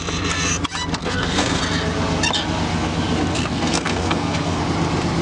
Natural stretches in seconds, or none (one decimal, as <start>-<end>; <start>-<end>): 0.0-1.0; 1.6-3.3; 4.6-5.2